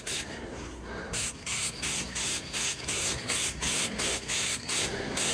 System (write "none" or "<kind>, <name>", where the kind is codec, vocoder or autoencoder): codec, SNAC